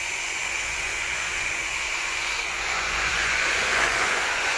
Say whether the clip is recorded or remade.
remade